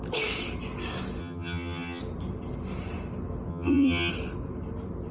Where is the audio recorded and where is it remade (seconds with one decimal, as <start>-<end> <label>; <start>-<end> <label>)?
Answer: 0.0-1.2 recorded; 1.2-2.0 remade; 2.0-3.5 recorded; 3.5-4.1 remade; 4.1-5.1 recorded